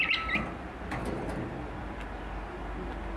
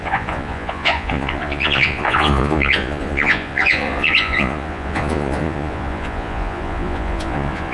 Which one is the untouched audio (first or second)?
first